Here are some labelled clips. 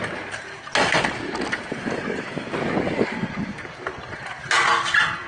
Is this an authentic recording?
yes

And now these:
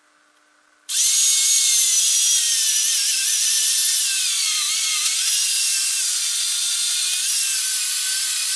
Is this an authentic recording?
yes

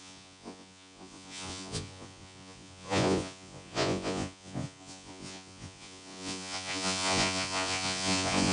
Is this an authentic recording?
no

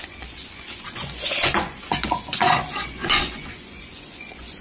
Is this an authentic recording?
no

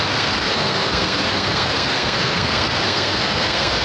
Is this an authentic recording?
no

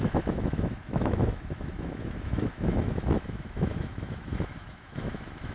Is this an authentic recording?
no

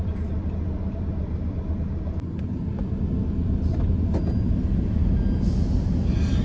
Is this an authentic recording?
yes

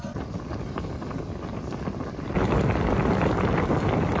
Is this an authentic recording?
yes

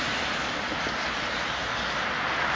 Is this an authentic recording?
yes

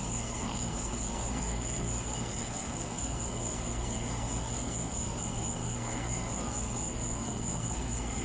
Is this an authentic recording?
no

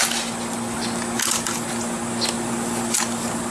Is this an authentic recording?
yes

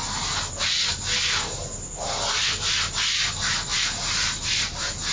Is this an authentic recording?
yes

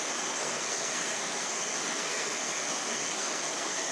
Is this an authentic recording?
no